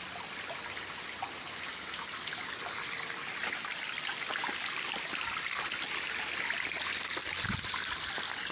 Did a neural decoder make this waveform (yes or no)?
no